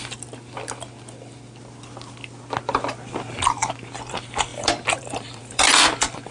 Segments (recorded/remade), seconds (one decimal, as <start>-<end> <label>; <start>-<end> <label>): 0.0-4.5 recorded; 4.5-6.3 remade